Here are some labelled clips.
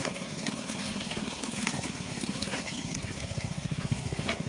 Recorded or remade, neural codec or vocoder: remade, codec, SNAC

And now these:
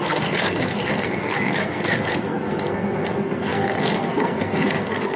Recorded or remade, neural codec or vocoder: remade, codec, SNAC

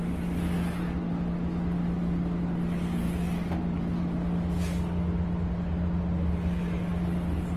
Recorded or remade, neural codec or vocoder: recorded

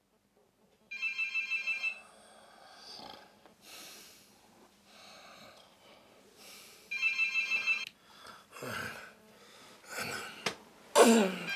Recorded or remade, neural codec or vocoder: recorded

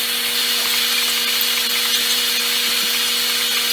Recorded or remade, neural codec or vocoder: recorded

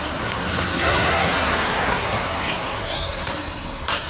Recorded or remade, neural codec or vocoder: remade, codec, SNAC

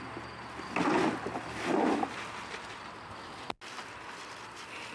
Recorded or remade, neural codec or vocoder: recorded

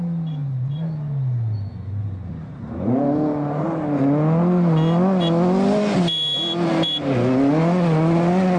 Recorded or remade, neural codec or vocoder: recorded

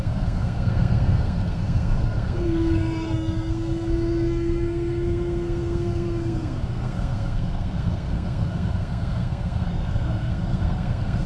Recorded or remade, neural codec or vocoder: remade, codec, SNAC